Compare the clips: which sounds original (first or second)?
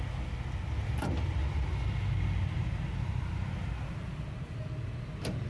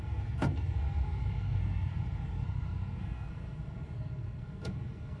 first